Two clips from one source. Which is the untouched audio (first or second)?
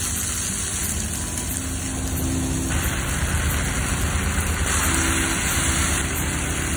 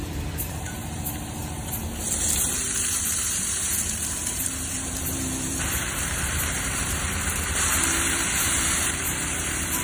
first